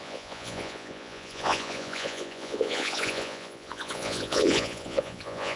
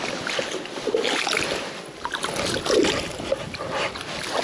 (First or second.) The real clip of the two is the second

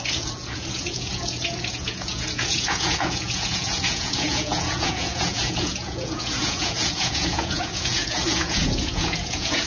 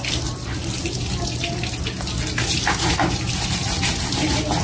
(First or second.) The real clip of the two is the second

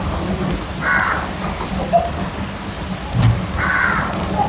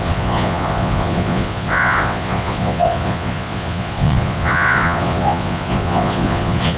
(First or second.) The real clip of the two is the first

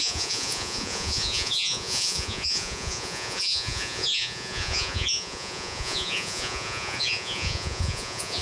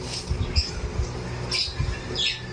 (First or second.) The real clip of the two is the second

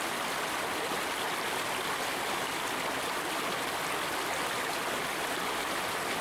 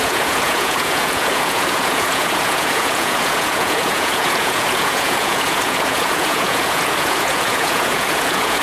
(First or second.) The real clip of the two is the first